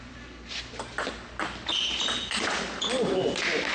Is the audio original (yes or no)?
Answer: yes